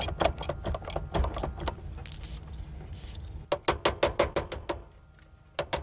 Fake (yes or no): no